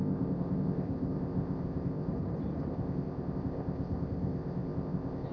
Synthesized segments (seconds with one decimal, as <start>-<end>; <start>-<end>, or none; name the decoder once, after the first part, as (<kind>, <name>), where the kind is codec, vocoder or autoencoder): 0.0-2.1 (codec, ZipCodec); 2.7-5.3

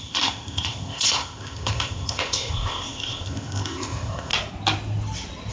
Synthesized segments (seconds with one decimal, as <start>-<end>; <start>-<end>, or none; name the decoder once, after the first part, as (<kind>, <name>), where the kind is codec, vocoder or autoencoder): 0.0-4.3 (codec, ZipCodec)